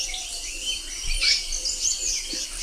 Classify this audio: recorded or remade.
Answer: remade